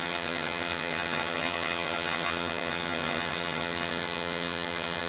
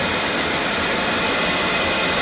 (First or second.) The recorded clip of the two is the second